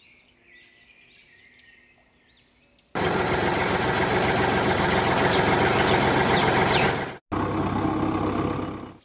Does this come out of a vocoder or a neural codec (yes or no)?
no